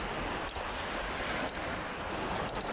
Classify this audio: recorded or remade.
recorded